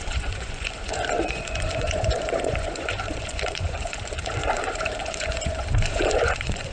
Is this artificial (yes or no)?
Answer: yes